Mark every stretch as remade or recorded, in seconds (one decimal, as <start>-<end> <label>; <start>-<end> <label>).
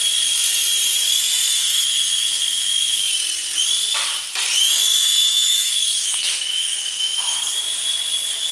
0.0-1.4 recorded; 1.4-3.1 remade; 3.1-4.6 recorded; 4.6-7.5 remade; 7.5-8.5 recorded